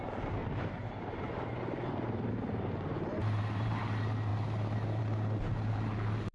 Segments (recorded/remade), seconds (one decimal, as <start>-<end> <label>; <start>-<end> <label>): 0.0-0.4 recorded; 0.4-2.3 remade; 2.3-3.2 recorded; 3.2-3.8 remade; 3.8-6.3 recorded